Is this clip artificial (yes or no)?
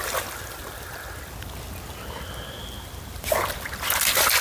no